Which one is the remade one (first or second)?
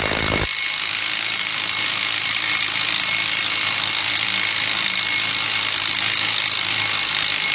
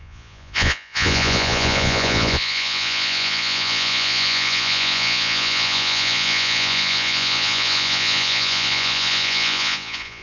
second